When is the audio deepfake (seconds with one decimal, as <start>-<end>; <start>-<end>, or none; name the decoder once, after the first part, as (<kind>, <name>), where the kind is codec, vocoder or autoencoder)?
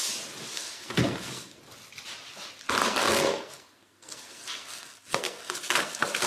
0.5-1.6 (codec, SNAC); 2.8-6.3